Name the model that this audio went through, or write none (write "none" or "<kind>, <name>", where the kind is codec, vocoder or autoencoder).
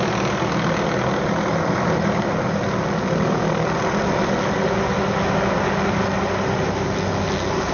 none